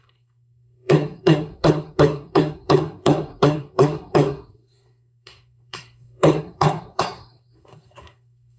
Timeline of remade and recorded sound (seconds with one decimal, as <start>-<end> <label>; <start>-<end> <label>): 0.0-8.6 remade